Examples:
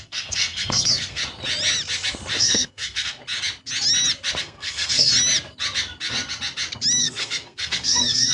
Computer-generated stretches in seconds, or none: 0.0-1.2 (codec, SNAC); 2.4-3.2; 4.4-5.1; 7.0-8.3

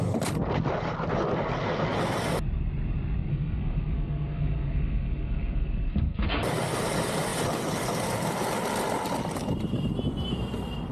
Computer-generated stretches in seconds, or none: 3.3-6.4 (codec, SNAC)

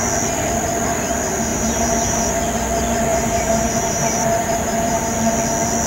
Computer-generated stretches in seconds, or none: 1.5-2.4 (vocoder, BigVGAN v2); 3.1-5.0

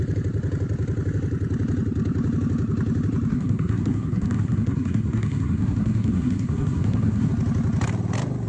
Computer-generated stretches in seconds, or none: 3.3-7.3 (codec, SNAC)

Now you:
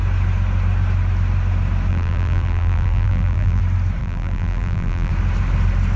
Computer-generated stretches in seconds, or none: 1.9-3.6 (vocoder, BigVGAN v2); 4.0-5.1

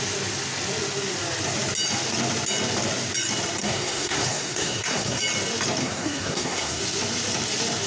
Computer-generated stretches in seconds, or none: 3.6-5.2 (codec, SNAC); 5.8-6.8

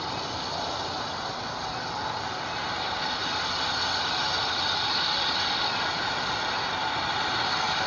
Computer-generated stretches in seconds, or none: none

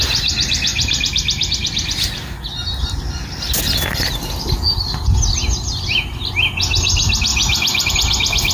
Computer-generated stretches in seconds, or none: 0.7-1.5 (vocoder, BigVGAN v2); 7.3-7.9